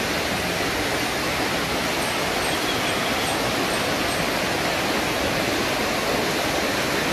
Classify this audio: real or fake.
real